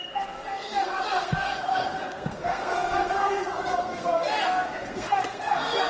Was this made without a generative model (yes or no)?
no